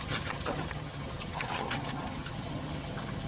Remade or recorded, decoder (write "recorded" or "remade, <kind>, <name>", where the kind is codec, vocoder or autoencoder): remade, vocoder, HiFi-GAN